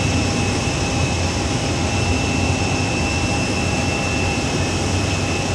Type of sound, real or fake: real